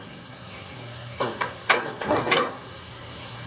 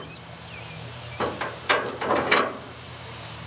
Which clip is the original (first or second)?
second